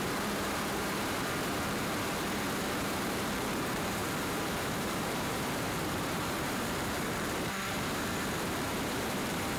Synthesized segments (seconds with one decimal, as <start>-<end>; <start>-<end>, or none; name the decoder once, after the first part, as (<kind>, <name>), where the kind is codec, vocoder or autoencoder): 0.0-9.6 (vocoder, BigVGAN v2)